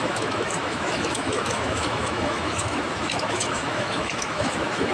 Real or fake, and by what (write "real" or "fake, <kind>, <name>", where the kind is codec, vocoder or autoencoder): fake, autoencoder, DAC-VAE